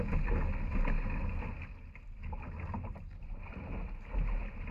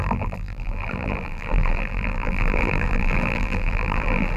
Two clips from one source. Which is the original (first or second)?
first